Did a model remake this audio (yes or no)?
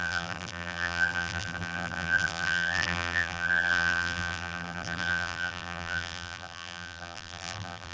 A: yes